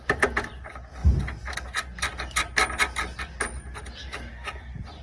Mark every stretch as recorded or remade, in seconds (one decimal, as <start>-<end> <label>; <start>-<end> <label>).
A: 0.0-4.0 recorded; 4.0-4.6 remade; 4.6-5.0 recorded